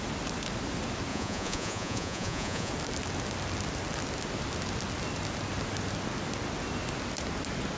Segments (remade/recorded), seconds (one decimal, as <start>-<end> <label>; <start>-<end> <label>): 0.0-1.1 recorded; 1.1-2.7 remade; 2.7-7.8 recorded